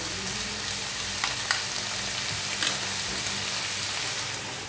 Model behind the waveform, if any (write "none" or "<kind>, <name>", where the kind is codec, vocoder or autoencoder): none